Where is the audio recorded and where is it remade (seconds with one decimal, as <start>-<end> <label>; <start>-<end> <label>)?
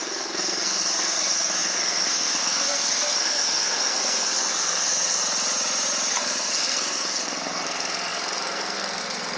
0.0-5.2 remade; 5.2-6.1 recorded; 6.1-9.4 remade